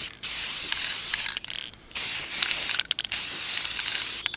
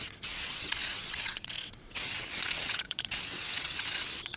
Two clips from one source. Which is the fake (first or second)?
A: second